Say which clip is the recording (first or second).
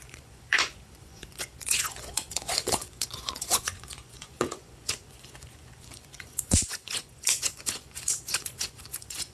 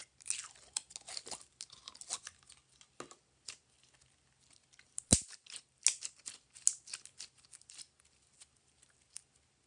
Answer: second